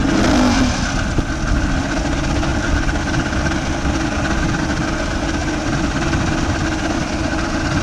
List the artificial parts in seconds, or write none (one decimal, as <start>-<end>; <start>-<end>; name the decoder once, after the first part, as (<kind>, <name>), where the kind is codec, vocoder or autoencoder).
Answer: 5.4-7.8 (vocoder, BigVGAN v2)